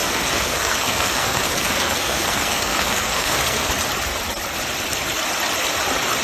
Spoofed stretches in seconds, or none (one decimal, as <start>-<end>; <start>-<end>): 0.0-3.7